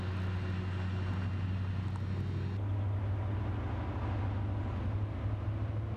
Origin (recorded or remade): recorded